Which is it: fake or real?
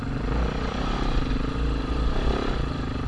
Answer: real